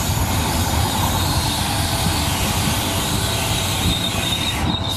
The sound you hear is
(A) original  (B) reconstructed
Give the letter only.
A